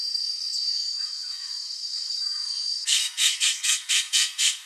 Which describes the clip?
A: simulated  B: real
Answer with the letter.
A